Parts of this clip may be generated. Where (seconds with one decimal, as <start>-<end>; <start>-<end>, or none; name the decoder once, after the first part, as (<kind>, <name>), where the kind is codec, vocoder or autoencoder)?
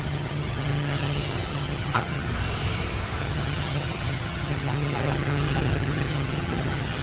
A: 0.0-2.3 (vocoder, HiFi-GAN); 3.2-7.0